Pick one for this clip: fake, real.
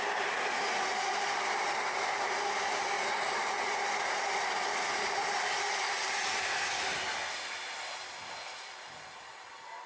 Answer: real